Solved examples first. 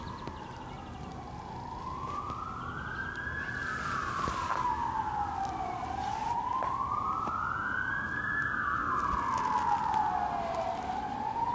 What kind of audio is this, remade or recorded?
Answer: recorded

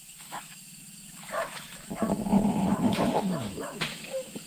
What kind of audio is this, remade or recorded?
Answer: remade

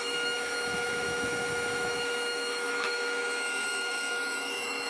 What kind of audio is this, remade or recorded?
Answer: remade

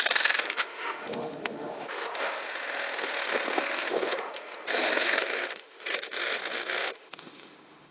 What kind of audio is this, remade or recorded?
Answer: remade